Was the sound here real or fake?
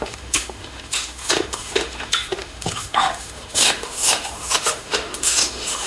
fake